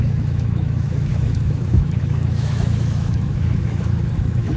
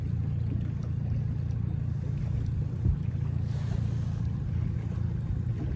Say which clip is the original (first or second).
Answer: second